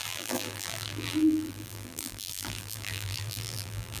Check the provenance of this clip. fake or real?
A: fake